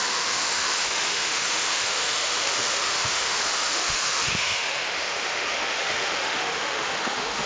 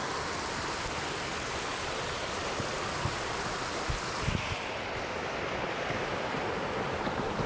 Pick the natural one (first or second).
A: second